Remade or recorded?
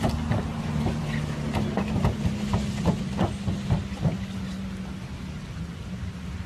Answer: recorded